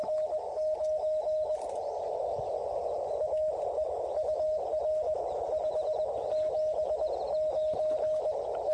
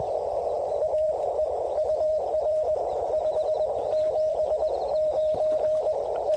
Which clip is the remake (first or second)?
second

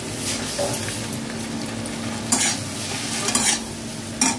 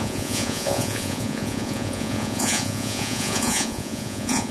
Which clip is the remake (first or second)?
second